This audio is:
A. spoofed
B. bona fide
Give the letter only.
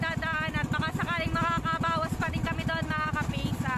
B